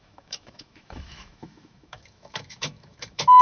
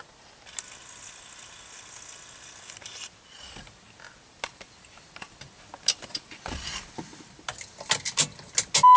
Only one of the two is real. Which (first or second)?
second